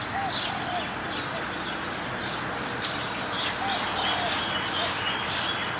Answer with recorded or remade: recorded